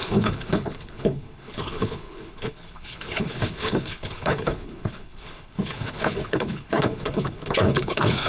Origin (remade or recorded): remade